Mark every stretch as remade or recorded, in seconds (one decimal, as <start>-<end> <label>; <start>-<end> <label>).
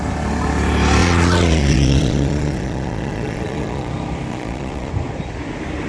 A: 0.0-1.0 recorded; 1.0-3.9 remade; 3.9-4.3 recorded; 4.3-4.9 remade; 4.9-5.9 recorded